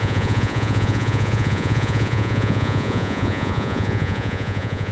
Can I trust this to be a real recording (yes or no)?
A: no